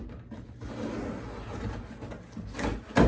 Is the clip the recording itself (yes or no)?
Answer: yes